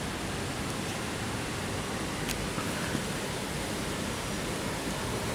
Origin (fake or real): real